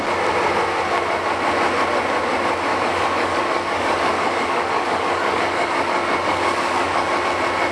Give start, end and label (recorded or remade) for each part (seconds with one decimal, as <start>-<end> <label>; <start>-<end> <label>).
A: 0.0-2.7 recorded; 2.7-7.2 remade; 7.2-7.7 recorded